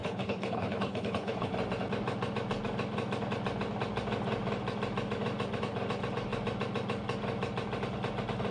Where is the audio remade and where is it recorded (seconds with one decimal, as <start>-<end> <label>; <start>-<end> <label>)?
0.0-1.5 remade; 1.5-8.5 recorded